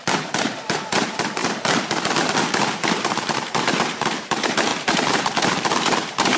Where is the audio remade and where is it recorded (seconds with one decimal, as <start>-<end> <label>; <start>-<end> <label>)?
0.0-1.4 remade; 1.4-2.9 recorded; 2.9-6.4 remade